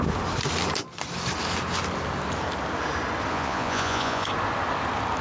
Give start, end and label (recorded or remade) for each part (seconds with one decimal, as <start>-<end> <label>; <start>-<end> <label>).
0.0-3.3 recorded; 3.3-4.3 remade; 4.3-5.2 recorded